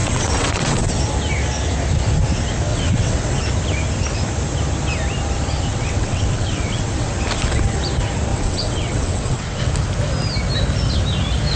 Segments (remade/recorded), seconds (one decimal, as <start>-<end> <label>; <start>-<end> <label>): 0.0-0.9 remade; 0.9-2.7 recorded; 2.7-3.4 remade; 3.4-5.7 recorded; 5.7-7.1 remade; 7.1-8.3 recorded; 8.3-9.7 remade; 9.7-11.6 recorded

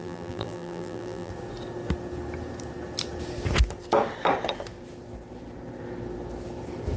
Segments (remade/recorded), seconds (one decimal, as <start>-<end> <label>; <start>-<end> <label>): 0.0-1.3 remade; 1.3-7.0 recorded

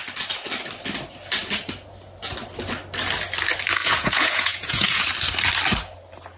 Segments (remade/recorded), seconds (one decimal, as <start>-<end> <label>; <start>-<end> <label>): 0.0-3.8 recorded; 3.8-5.1 remade; 5.1-6.4 recorded

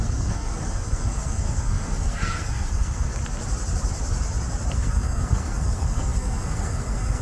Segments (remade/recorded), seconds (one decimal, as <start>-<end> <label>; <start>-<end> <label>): 0.0-3.2 remade; 3.2-4.7 recorded; 4.7-7.2 remade

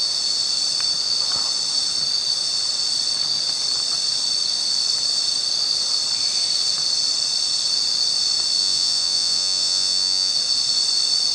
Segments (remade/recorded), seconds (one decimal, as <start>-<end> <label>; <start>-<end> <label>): 0.0-8.6 recorded; 8.6-10.3 remade; 10.3-11.3 recorded

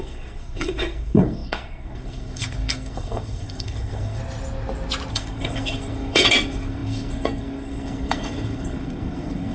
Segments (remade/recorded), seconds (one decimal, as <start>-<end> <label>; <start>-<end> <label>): 0.0-4.2 remade; 4.2-5.1 recorded; 5.1-9.5 remade

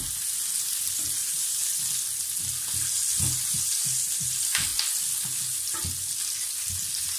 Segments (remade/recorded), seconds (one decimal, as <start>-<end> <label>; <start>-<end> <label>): 0.0-1.2 recorded; 1.2-1.8 remade; 1.8-7.2 recorded

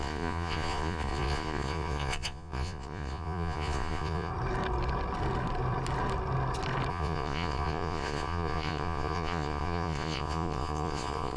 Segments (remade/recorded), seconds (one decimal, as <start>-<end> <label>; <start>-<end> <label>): 0.0-4.3 remade; 4.3-6.9 recorded; 6.9-11.4 remade